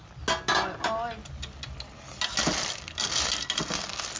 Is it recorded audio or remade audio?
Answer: recorded